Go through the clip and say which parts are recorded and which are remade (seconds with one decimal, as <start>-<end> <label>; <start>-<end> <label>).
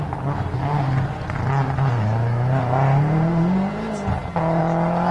0.0-5.1 recorded